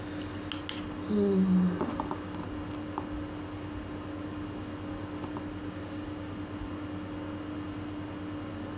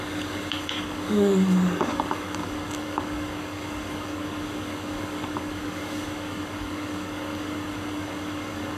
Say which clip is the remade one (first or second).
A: second